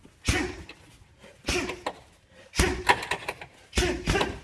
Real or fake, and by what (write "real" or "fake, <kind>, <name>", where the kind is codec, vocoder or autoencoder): real